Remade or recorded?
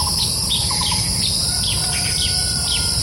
remade